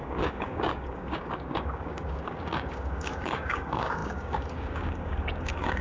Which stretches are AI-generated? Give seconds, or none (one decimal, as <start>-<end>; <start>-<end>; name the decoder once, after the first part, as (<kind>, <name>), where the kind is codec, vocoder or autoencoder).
0.0-5.8 (codec, DAC)